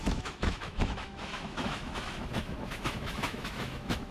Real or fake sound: fake